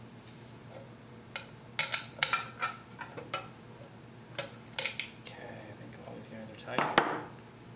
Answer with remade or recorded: recorded